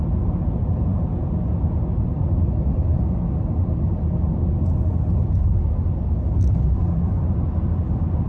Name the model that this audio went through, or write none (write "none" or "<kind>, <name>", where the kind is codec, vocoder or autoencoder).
none